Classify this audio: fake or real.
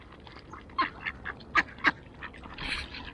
real